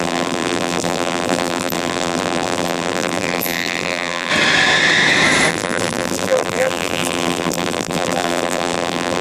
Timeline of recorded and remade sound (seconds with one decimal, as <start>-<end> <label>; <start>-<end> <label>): 0.0-4.3 remade; 4.3-5.5 recorded; 5.5-9.2 remade